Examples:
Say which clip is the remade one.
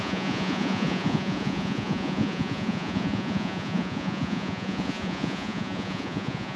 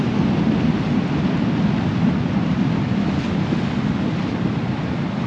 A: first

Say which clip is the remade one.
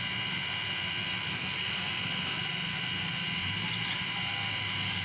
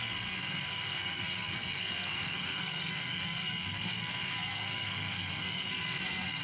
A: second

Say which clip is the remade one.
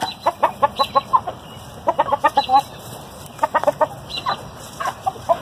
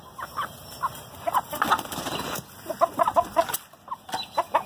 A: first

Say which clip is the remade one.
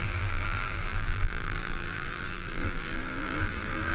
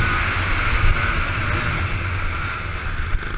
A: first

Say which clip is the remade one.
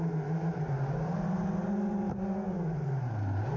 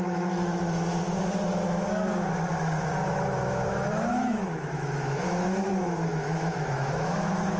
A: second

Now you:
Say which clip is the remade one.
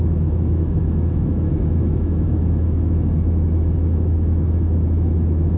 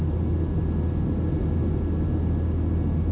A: first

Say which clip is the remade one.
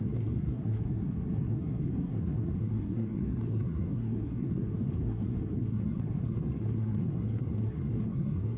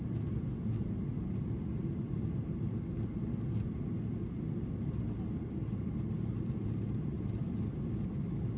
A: first